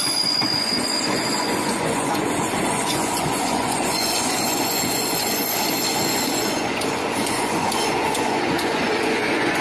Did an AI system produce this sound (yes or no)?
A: yes